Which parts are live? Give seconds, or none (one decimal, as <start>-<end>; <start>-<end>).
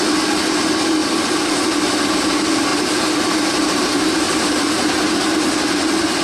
0.0-2.7; 4.5-6.2